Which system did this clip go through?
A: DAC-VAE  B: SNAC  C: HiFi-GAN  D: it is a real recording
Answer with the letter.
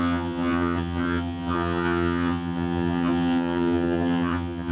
C